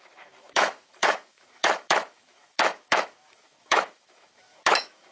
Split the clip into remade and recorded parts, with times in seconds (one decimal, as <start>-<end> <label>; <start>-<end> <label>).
0.0-5.1 remade